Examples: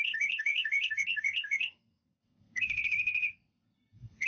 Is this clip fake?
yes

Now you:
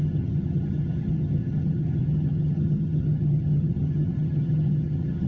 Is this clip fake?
yes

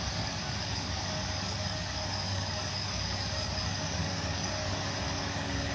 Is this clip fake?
yes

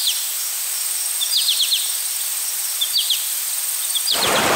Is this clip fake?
no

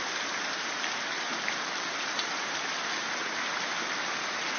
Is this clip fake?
no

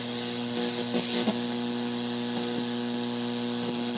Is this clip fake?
no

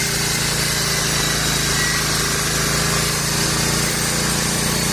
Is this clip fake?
no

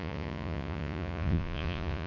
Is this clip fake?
yes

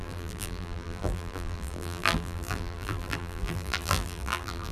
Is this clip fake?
yes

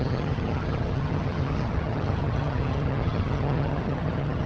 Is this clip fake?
yes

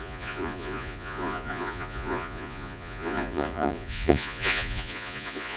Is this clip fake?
yes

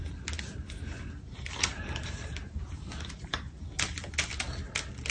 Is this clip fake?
no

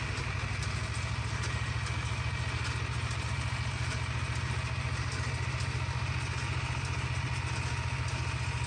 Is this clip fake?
no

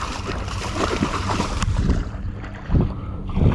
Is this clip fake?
yes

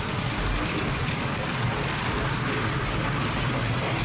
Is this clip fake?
no